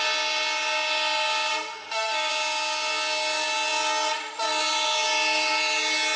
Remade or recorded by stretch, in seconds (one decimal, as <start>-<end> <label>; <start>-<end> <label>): 0.0-1.5 recorded; 1.5-2.3 remade; 2.3-6.2 recorded